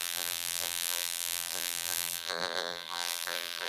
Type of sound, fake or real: fake